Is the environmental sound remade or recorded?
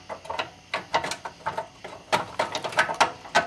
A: recorded